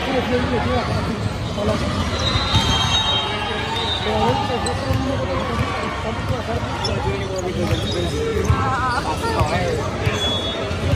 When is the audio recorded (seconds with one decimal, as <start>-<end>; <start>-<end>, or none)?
0.0-8.3; 9.0-10.9